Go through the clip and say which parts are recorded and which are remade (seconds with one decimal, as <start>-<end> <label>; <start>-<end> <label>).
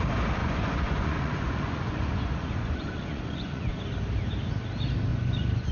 0.0-0.4 recorded; 0.4-3.8 remade; 3.8-5.1 recorded; 5.1-5.7 remade